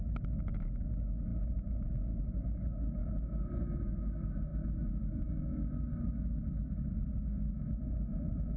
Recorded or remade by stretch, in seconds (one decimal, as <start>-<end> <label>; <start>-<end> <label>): 0.0-3.0 remade; 3.0-3.6 recorded; 3.6-8.6 remade